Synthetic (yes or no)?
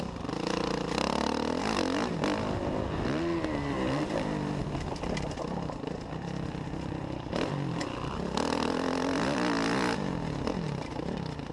no